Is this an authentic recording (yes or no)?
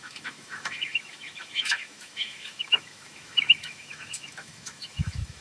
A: no